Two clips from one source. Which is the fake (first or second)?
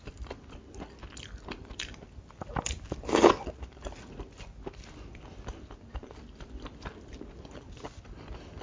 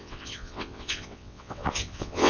second